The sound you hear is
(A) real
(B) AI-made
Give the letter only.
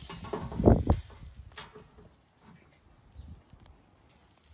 A